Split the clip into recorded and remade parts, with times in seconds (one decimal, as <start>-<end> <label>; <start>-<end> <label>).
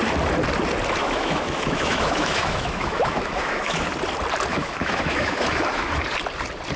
0.0-1.0 recorded; 1.0-3.9 remade; 3.9-4.5 recorded; 4.5-6.0 remade; 6.0-6.8 recorded